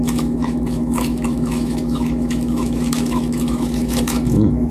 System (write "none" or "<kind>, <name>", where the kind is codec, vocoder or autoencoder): autoencoder, DAC-VAE